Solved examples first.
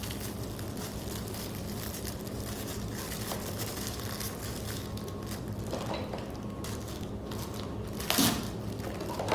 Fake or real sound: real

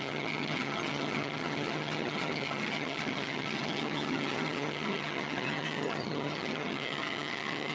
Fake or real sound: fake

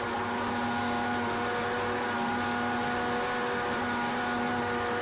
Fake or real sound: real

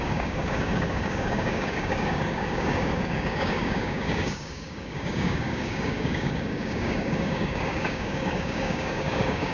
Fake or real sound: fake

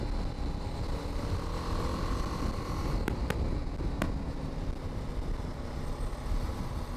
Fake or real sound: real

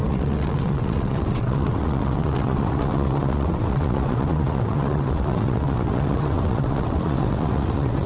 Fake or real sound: fake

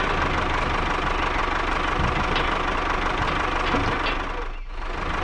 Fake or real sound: real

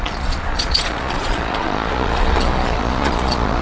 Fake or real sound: fake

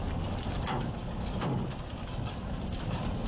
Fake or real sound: real